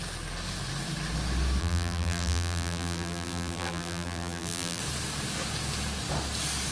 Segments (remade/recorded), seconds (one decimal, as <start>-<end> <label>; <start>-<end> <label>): 0.0-1.6 recorded; 1.6-4.8 remade; 4.8-6.7 recorded